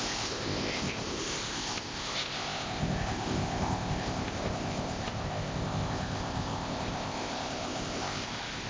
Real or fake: fake